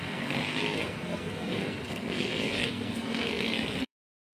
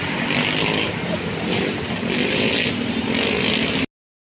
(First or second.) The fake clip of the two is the first